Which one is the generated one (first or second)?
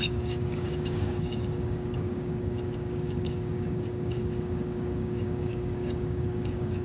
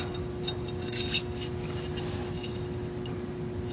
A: first